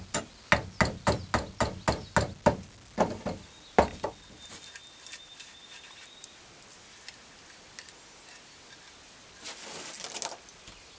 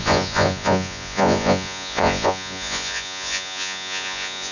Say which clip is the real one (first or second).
first